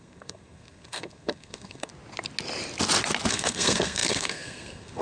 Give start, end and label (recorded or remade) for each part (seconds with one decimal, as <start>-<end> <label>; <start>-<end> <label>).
0.0-1.9 remade; 1.9-3.3 recorded; 3.3-5.0 remade